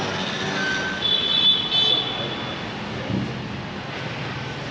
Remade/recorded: recorded